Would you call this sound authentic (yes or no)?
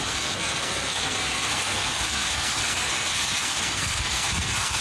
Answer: no